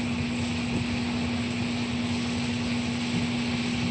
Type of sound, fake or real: real